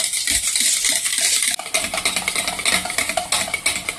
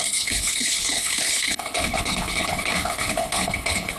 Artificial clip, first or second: second